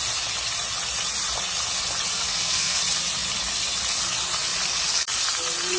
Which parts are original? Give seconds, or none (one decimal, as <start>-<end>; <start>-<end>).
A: 0.0-2.1; 2.8-5.8